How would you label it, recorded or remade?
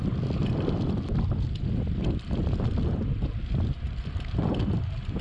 recorded